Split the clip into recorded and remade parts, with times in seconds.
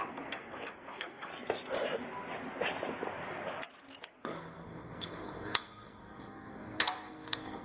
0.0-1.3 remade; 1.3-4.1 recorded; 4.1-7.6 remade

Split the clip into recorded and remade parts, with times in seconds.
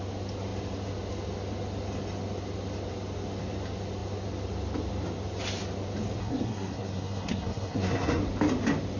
0.0-6.2 recorded; 6.2-8.2 remade; 8.2-9.0 recorded